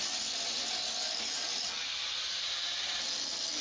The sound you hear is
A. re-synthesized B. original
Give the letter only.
B